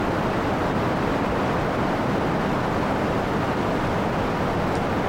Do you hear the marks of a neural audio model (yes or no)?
no